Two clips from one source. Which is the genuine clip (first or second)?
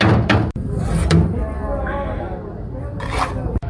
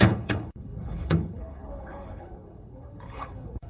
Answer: first